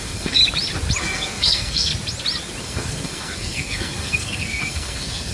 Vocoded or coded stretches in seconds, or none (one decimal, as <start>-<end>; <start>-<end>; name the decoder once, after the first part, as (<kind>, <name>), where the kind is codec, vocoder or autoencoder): 0.0-0.4 (codec, SNAC); 1.0-1.9; 2.6-5.3